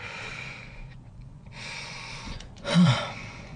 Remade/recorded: remade